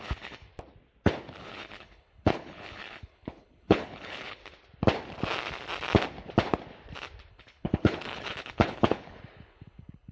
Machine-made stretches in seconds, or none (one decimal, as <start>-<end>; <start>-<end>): 0.0-0.5; 1.4-4.4; 7.3-10.1